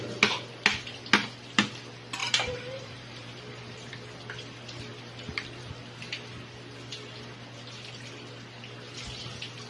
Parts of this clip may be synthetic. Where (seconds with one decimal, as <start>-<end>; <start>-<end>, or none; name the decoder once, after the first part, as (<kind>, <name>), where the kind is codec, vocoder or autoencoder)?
2.2-3.9 (vocoder, BigVGAN v2); 4.9-5.8